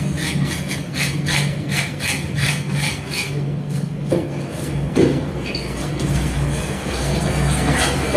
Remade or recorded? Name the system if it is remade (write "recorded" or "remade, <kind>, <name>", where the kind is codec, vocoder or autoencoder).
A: remade, codec, SNAC